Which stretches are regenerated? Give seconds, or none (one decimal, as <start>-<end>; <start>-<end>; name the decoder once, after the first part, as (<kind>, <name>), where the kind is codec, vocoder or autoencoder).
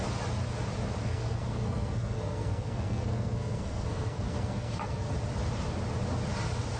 1.0-5.1 (codec, SNAC)